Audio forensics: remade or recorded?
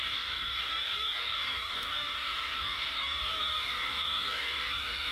remade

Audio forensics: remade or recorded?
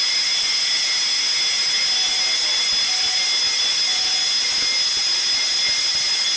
recorded